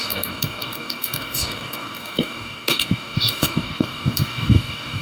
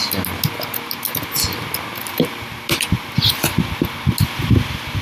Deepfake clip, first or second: first